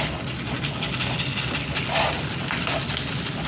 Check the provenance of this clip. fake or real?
real